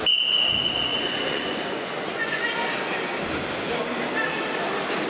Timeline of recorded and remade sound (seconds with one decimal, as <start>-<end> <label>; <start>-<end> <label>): 0.0-0.9 recorded; 0.9-2.4 remade; 2.4-5.1 recorded

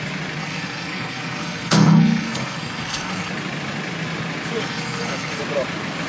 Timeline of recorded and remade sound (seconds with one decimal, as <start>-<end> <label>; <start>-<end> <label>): 0.0-0.4 recorded; 0.4-3.3 remade; 3.3-4.6 recorded; 4.6-5.4 remade; 5.4-6.1 recorded

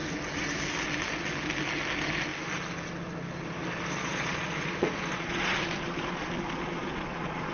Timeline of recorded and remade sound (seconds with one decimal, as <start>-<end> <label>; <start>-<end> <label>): 0.0-4.0 recorded; 4.0-7.5 remade